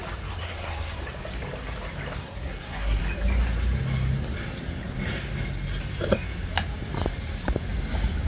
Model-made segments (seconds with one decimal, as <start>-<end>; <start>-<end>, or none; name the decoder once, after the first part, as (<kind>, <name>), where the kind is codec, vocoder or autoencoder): 0.4-1.0 (codec, SNAC); 2.2-3.0